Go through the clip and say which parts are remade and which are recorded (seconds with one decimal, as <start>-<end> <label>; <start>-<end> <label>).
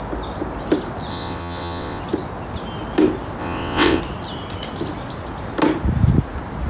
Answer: 0.0-1.1 recorded; 1.1-2.0 remade; 2.0-3.4 recorded; 3.4-4.0 remade; 4.0-6.7 recorded